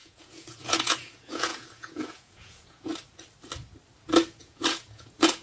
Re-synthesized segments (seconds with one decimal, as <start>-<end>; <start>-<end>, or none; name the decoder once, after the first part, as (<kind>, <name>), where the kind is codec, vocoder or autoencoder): 0.0-2.9 (vocoder, Vocos); 4.4-5.4